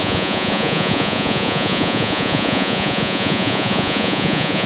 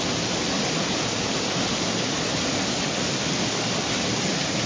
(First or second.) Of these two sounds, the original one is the second